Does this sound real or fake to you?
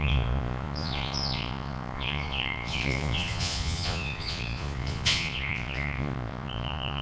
fake